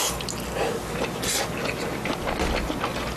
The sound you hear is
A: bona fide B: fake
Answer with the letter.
A